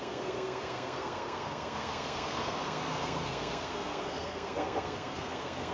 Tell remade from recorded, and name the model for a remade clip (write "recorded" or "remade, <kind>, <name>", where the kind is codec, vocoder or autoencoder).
remade, codec, SNAC